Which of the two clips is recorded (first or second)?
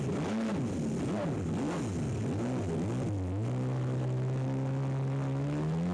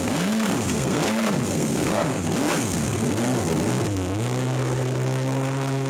first